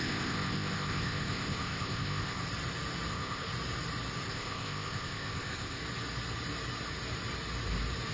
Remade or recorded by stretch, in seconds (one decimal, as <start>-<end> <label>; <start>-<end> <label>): 0.0-2.4 remade; 2.4-3.1 recorded; 3.1-3.5 remade; 3.5-4.3 recorded; 4.3-5.8 remade; 5.8-8.1 recorded